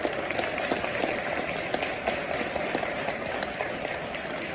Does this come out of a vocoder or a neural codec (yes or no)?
no